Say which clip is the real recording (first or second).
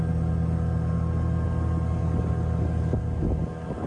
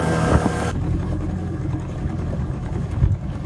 first